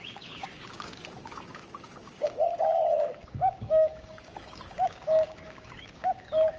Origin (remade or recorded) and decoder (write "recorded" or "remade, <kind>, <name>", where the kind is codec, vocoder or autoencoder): remade, codec, DAC